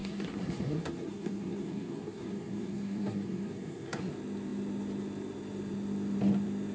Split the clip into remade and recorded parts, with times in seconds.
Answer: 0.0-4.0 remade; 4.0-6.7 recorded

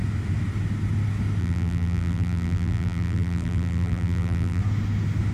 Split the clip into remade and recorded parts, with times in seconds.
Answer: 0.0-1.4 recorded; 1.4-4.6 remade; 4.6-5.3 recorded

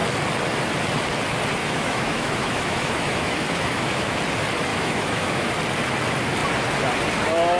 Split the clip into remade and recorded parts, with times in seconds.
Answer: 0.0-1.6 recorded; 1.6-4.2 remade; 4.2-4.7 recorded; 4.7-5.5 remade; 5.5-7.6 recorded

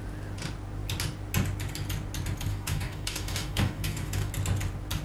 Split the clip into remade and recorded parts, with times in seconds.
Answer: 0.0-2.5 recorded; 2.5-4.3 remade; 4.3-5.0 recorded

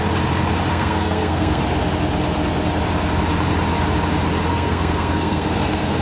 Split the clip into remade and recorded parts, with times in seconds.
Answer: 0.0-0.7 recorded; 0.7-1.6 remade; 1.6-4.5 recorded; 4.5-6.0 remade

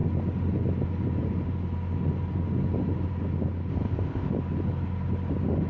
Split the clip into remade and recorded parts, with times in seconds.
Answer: 0.0-3.7 recorded; 3.7-4.3 remade; 4.3-5.7 recorded

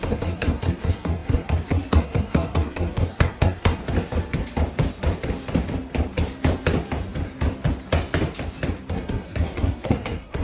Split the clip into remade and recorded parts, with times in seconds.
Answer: 0.0-3.8 remade; 3.8-8.9 recorded; 8.9-10.4 remade